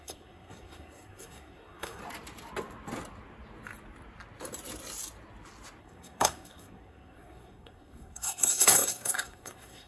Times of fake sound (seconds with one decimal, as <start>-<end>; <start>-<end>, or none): 0.0-2.0; 5.8-9.9